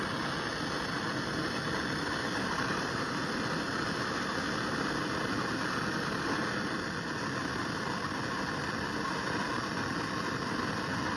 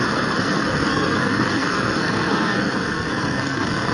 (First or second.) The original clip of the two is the first